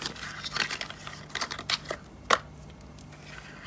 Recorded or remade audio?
recorded